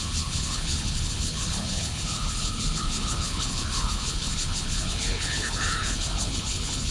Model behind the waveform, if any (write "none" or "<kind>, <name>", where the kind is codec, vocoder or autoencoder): codec, HILCodec